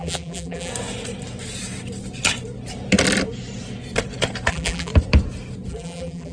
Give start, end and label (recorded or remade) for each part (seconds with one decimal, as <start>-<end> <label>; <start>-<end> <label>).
0.0-0.7 remade; 0.7-4.5 recorded; 4.5-4.9 remade; 4.9-5.7 recorded; 5.7-6.3 remade